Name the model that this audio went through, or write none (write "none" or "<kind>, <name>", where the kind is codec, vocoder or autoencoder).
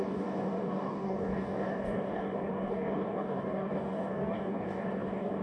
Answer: codec, DAC